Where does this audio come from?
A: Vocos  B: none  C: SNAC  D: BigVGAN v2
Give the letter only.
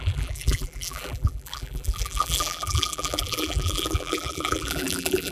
D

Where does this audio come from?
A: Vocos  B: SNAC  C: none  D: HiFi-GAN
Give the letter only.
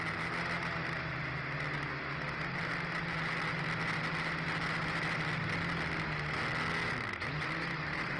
C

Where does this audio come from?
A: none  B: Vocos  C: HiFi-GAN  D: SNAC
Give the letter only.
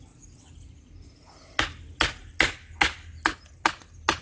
A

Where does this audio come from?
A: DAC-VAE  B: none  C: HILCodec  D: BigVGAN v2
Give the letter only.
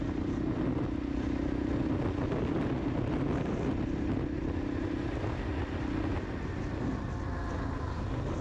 B